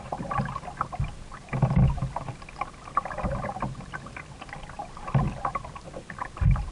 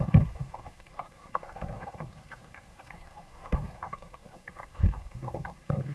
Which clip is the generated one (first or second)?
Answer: second